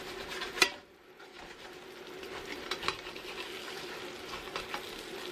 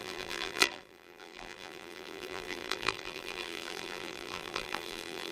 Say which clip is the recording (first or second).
first